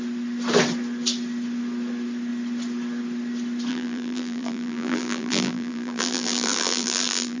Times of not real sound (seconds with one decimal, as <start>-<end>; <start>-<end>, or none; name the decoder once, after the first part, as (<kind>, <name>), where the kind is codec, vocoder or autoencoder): 3.7-7.4 (vocoder, BigVGAN v2)